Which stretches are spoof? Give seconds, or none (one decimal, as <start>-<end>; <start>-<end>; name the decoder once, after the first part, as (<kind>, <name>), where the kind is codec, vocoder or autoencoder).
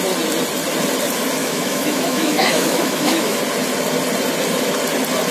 1.4-3.4 (autoencoder, DAC-VAE)